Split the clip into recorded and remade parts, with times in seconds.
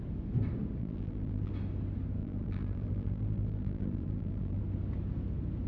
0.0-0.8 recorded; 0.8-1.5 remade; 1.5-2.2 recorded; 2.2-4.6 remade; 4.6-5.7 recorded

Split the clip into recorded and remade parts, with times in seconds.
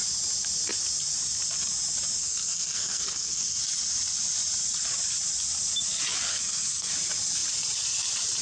0.0-2.2 recorded; 2.2-3.6 remade; 3.6-6.3 recorded; 6.3-6.9 remade; 6.9-8.4 recorded